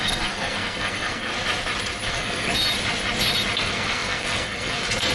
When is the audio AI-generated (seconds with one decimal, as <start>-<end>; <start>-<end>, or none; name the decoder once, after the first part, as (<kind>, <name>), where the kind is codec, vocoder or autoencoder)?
0.0-1.3 (codec, SNAC); 2.1-2.5; 3.6-5.1